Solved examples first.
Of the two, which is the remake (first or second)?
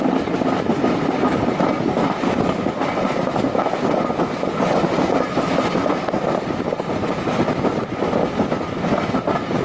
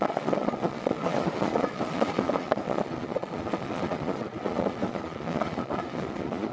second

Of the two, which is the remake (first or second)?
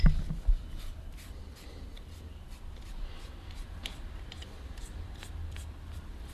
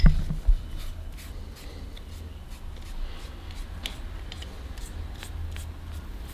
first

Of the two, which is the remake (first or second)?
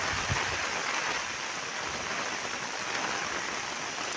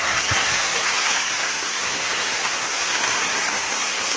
second